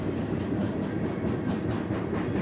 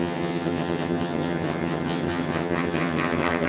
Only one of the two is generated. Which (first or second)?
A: second